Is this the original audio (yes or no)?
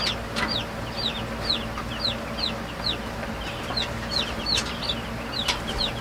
yes